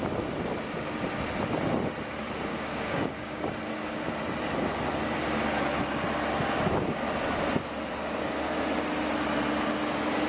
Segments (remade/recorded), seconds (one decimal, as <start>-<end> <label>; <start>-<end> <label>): 0.0-2.5 recorded; 2.5-3.5 remade; 3.5-10.3 recorded